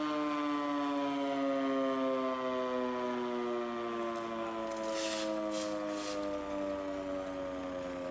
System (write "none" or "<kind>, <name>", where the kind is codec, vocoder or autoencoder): none